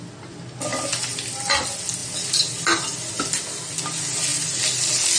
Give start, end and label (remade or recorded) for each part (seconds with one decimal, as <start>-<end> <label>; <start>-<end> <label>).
0.0-5.2 recorded